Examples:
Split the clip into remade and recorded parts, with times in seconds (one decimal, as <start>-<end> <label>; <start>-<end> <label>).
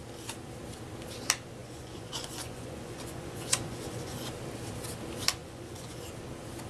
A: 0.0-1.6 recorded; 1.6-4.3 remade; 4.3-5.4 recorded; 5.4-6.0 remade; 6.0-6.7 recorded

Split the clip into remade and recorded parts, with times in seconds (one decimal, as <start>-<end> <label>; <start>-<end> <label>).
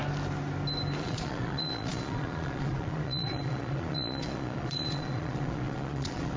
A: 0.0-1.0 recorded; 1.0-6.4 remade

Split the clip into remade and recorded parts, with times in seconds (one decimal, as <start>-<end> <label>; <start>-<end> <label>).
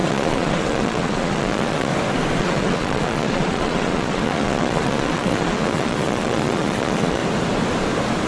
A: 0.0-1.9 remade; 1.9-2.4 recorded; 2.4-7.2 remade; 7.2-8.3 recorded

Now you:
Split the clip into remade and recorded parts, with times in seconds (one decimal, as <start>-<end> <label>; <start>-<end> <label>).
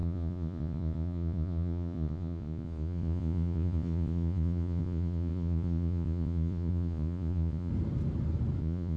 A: 0.0-7.7 remade; 7.7-8.6 recorded; 8.6-9.0 remade